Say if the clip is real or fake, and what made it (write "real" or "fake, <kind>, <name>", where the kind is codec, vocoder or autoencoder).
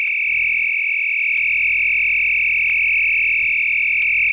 real